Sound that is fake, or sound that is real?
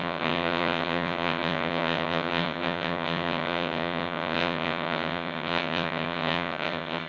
fake